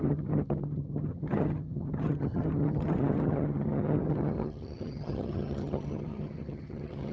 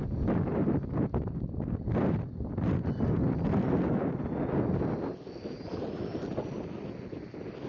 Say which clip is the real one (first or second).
second